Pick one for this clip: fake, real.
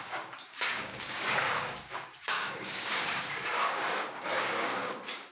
fake